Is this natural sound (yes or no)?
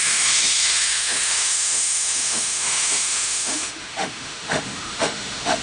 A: no